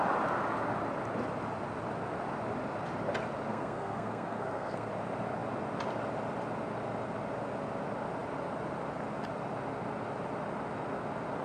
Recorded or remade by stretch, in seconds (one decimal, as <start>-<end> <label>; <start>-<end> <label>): 0.0-3.5 recorded; 3.5-4.9 remade; 4.9-11.4 recorded